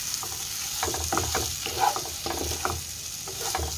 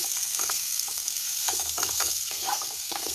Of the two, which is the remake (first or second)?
second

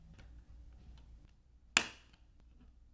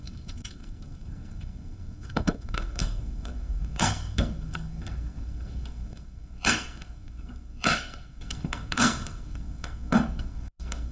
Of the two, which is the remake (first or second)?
second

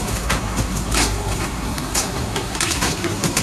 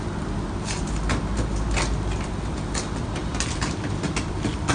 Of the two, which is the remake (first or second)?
first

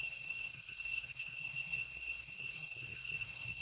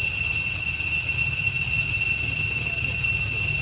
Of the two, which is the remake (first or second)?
first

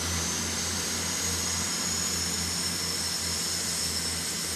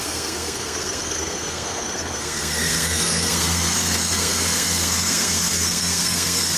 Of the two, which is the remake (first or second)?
second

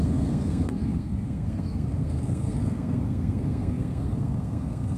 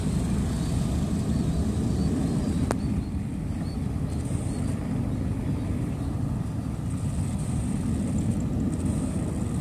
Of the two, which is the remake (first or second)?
first